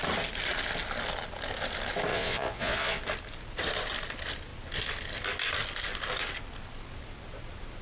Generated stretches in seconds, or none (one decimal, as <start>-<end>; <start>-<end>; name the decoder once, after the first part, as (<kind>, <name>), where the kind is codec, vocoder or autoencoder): 2.1-3.0 (vocoder, Vocos)